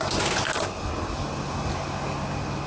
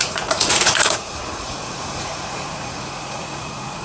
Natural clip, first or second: first